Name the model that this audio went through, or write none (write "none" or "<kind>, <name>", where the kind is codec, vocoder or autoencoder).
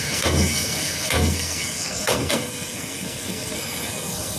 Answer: codec, SNAC